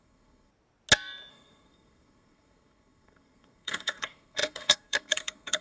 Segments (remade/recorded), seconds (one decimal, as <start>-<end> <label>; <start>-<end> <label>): 0.0-0.5 remade; 0.5-1.3 recorded; 1.3-5.6 remade

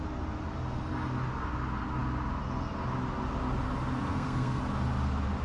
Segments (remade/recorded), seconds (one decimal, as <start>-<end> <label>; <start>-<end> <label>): 0.0-4.1 recorded; 4.1-4.6 remade; 4.6-5.4 recorded

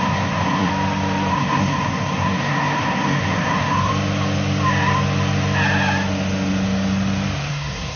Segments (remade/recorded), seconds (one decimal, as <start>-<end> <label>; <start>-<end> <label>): 0.0-0.7 remade; 0.7-1.3 recorded; 1.3-3.9 remade; 3.9-7.5 recorded; 7.5-8.0 remade